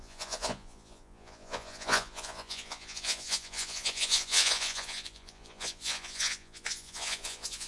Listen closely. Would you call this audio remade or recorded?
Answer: remade